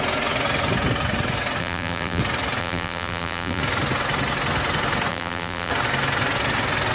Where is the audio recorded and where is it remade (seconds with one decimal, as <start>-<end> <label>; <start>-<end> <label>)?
0.0-1.6 recorded; 1.6-2.2 remade; 2.2-2.6 recorded; 2.6-3.6 remade; 3.6-5.1 recorded; 5.1-5.7 remade; 5.7-6.9 recorded